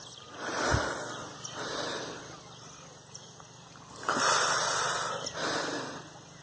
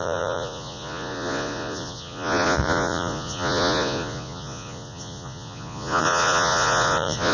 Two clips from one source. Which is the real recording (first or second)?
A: first